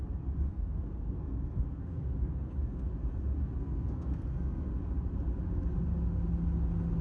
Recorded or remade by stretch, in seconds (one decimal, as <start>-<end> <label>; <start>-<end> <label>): 0.0-0.5 recorded; 0.5-2.9 remade; 2.9-3.4 recorded; 3.4-4.7 remade; 4.7-7.0 recorded